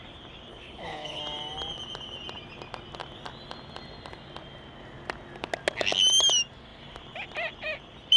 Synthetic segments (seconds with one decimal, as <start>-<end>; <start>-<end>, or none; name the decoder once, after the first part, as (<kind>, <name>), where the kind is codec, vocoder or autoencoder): 0.5-1.2 (codec, HILCodec)